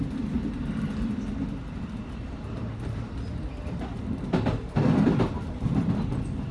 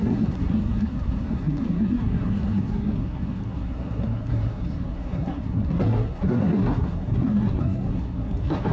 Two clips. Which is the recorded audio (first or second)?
first